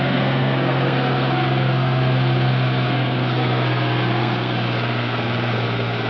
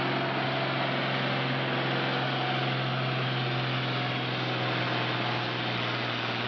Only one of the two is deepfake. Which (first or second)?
first